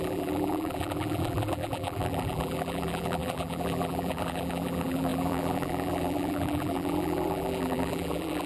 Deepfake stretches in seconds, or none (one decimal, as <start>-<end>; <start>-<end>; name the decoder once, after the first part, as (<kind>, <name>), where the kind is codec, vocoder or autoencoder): 0.0-8.5 (vocoder, BigVGAN v2)